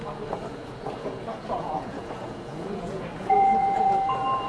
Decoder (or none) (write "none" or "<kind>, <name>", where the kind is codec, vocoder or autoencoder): vocoder, Vocos